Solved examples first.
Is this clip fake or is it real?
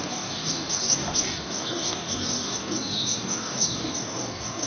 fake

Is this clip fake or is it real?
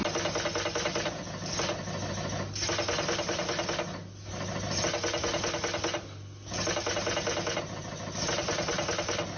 real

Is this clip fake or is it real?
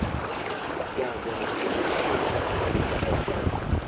fake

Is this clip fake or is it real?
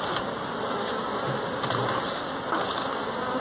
real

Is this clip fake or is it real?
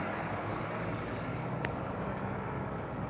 fake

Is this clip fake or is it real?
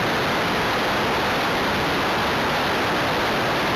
real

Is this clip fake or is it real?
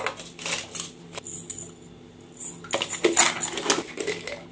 real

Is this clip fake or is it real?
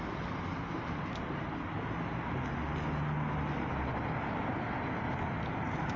real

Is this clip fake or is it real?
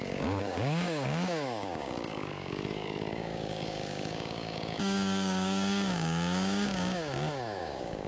fake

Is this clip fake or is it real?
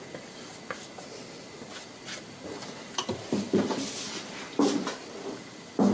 real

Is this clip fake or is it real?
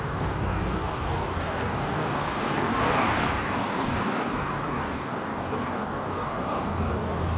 fake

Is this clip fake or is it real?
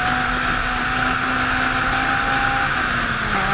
real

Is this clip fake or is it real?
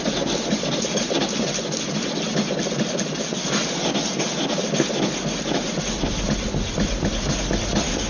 real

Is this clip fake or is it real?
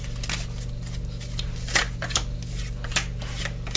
real